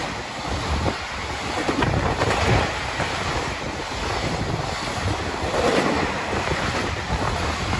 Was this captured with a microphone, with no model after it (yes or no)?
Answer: yes